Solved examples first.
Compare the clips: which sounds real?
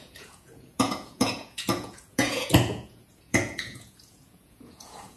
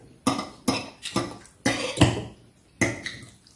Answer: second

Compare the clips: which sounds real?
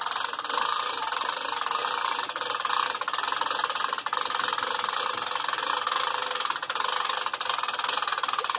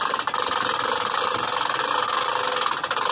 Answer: first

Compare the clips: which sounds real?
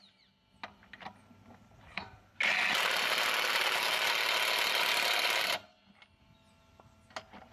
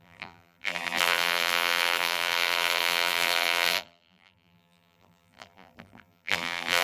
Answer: first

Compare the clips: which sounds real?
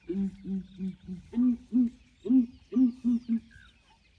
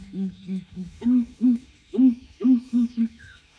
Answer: first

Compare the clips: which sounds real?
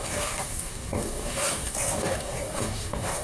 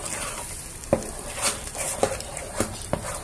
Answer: second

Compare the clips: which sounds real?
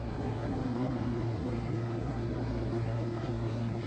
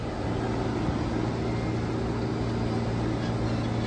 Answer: second